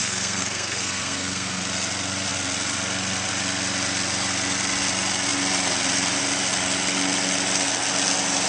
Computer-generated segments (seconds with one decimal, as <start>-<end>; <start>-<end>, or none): 0.0-1.6